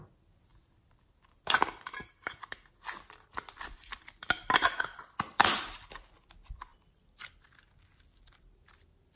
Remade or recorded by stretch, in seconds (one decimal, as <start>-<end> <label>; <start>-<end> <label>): 0.0-9.2 remade

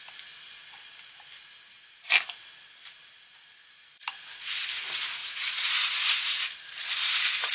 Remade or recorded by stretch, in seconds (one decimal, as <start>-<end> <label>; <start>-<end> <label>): 0.0-5.2 recorded; 5.2-6.2 remade; 6.2-7.5 recorded

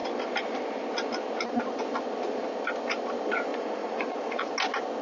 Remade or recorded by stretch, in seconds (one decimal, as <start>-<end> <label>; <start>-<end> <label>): 0.0-3.5 recorded; 3.5-4.5 remade; 4.5-5.0 recorded

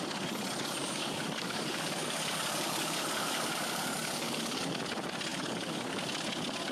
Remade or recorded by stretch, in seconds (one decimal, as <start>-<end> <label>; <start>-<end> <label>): 0.0-0.8 recorded; 0.8-4.8 remade; 4.8-5.3 recorded; 5.3-6.0 remade; 6.0-6.7 recorded

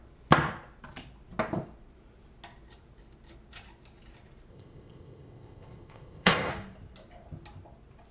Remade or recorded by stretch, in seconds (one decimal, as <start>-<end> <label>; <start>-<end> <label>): 0.0-4.5 recorded; 4.5-6.5 remade; 6.5-8.1 recorded

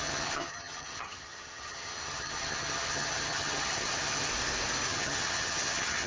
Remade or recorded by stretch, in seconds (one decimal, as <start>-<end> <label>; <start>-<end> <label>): 0.0-4.3 remade; 4.3-4.9 recorded; 4.9-6.1 remade

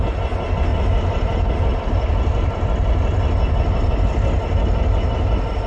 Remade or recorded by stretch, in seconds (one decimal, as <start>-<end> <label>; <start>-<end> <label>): 0.0-0.7 recorded; 0.7-3.9 remade; 3.9-5.7 recorded

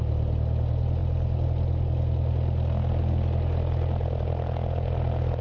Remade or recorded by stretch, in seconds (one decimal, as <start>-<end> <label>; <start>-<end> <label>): 0.0-5.4 recorded